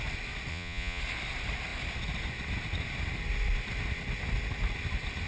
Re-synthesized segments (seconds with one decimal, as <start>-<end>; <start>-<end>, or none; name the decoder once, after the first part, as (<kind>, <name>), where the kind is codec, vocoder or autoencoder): 0.5-1.0 (vocoder, Vocos)